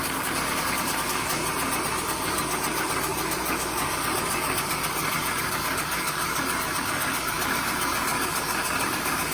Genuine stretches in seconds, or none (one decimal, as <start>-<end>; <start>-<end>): 1.4-2.0